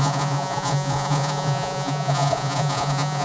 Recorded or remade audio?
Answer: remade